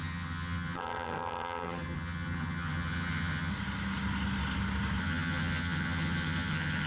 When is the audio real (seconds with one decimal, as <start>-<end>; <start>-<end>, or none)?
3.5-5.0